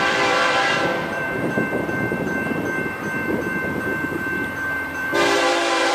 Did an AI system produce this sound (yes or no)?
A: yes